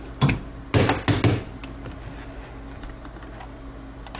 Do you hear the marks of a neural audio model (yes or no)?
no